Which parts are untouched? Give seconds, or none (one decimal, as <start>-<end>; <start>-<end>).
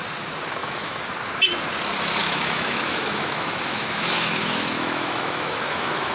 0.0-0.6; 1.1-2.2